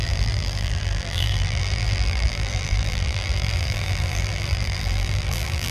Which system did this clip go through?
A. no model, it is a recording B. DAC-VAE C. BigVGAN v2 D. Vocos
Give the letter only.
C